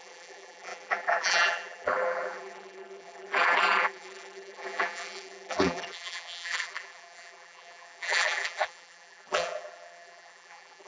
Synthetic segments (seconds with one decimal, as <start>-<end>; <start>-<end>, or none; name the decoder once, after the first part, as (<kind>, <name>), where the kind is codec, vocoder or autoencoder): 0.0-10.9 (vocoder, BigVGAN v2)